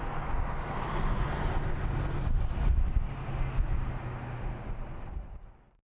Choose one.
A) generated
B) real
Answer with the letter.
B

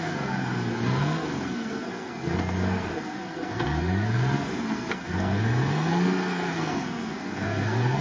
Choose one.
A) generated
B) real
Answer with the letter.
A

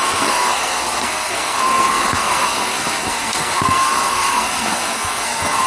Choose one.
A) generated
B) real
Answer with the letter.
A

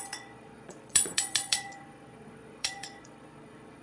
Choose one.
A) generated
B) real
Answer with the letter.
A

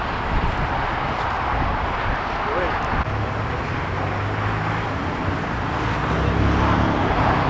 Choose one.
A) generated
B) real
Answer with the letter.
B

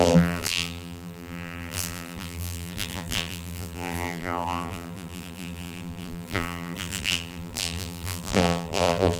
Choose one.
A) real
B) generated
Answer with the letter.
B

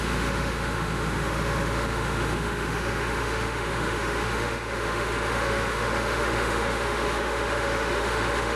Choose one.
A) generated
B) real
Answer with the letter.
A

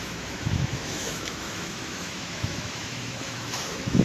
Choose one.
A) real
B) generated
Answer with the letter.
B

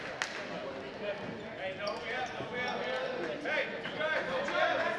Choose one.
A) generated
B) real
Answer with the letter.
B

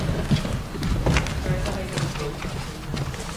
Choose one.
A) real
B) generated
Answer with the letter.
A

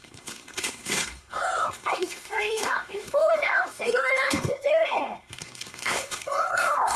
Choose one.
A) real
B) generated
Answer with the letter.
B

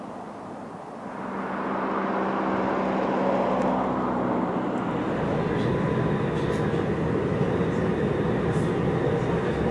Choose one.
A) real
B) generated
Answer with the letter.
A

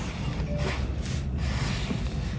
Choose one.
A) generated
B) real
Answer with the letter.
B